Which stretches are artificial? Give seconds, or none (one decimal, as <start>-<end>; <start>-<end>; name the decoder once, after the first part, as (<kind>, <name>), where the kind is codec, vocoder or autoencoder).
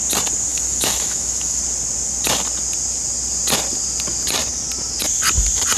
0.5-1.6 (autoencoder, DAC-VAE)